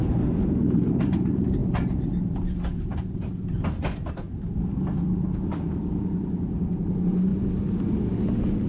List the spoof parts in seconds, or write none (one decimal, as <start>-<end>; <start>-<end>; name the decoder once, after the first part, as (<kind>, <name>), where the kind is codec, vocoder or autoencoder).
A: 0.0-1.6 (vocoder, BigVGAN v2); 4.1-7.3